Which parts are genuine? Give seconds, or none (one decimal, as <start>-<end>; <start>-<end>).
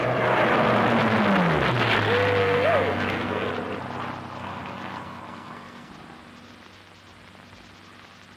0.0-2.4; 3.5-4.4; 5.9-8.4